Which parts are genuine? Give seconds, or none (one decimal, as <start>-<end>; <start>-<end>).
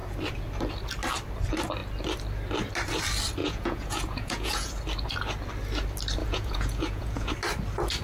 0.0-3.4; 4.7-6.2; 7.3-8.0